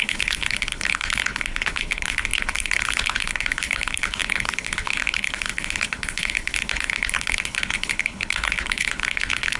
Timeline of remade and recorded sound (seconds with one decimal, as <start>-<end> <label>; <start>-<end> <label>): 0.0-9.6 remade